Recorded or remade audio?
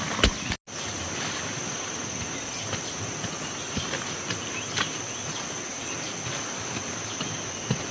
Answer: recorded